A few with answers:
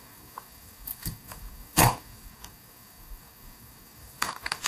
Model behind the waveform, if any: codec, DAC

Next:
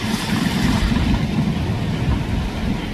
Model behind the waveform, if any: none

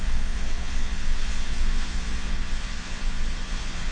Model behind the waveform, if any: vocoder, Vocos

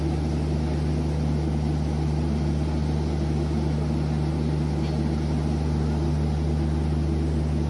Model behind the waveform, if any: none